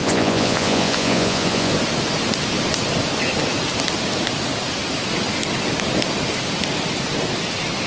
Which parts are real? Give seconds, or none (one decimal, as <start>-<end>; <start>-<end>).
1.7-7.9